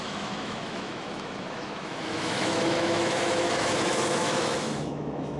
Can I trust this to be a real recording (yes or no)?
no